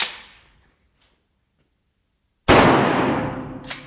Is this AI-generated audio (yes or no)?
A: no